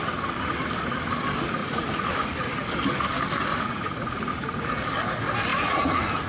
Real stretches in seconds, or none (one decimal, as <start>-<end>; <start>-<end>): 0.0-1.6; 2.5-3.5; 4.7-5.5